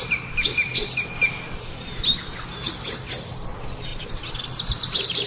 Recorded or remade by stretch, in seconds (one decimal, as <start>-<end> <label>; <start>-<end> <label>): 0.0-0.6 recorded; 0.6-2.5 remade; 2.5-3.9 recorded; 3.9-5.3 remade